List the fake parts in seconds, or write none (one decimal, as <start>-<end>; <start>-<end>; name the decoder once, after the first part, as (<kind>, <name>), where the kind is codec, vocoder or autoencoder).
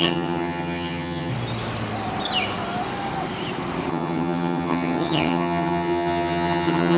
0.0-1.3 (vocoder, HiFi-GAN); 3.9-7.0